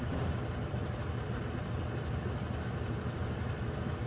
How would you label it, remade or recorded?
recorded